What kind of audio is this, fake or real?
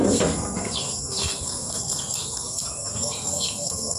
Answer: fake